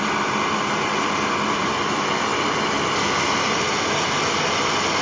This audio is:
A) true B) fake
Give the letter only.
A